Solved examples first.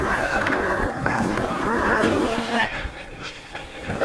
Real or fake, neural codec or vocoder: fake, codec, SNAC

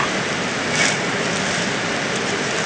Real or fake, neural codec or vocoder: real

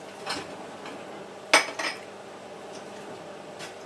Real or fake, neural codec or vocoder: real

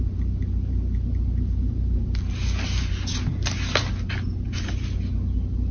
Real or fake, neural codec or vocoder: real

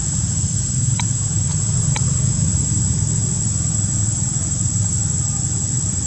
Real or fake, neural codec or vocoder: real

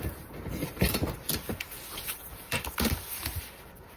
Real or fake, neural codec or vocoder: fake, vocoder, BigVGAN v2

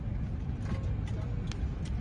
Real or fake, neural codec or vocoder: real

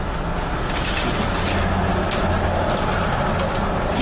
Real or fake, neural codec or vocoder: real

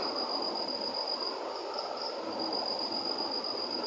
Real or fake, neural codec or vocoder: real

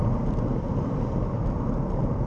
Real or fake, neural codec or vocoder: real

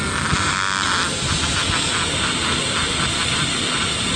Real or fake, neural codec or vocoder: real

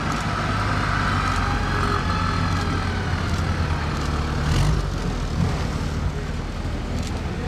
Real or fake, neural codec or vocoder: real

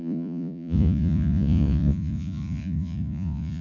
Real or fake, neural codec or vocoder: fake, vocoder, Vocos